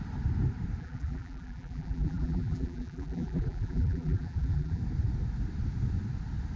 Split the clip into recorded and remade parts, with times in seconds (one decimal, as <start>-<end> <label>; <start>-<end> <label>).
0.0-0.8 recorded; 0.8-4.8 remade; 4.8-6.6 recorded

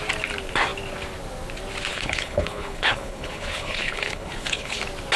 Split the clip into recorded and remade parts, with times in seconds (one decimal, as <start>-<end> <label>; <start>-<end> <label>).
0.0-1.9 recorded; 1.9-4.8 remade; 4.8-5.2 recorded

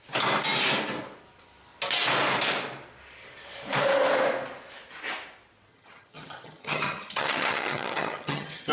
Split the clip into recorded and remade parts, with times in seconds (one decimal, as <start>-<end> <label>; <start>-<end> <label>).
0.0-5.7 recorded; 5.7-8.7 remade